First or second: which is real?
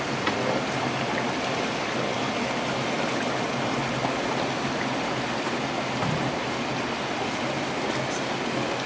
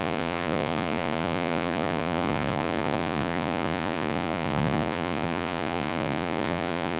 first